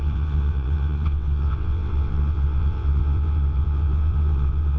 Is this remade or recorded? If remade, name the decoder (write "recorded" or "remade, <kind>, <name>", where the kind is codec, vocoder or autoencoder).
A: remade, vocoder, WaveNeXt